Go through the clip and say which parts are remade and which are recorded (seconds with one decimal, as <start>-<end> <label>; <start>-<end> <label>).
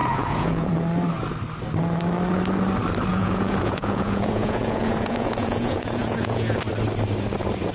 0.0-0.7 remade; 0.7-3.1 recorded; 3.1-6.6 remade; 6.6-7.7 recorded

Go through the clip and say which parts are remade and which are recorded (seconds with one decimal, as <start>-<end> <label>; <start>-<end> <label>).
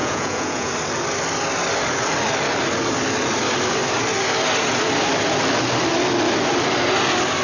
0.0-0.7 remade; 0.7-7.4 recorded